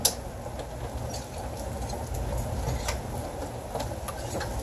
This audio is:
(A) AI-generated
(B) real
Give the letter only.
B